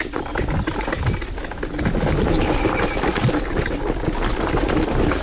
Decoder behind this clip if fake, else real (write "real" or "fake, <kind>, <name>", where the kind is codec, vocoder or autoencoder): real